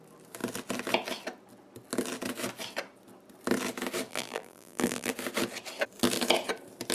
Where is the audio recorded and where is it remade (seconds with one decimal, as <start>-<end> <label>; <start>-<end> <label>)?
0.0-4.1 recorded; 4.1-5.1 remade; 5.1-6.9 recorded